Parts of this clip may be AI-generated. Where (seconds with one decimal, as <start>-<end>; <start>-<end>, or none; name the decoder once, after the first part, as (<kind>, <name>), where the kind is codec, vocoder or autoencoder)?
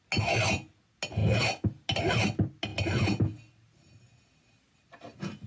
none